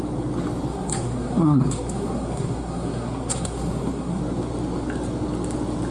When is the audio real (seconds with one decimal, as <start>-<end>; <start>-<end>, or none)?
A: 0.0-0.7; 4.2-5.9